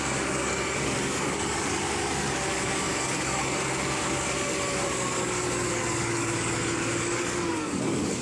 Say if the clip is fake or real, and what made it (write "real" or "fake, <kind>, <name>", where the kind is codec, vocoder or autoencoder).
fake, codec, DAC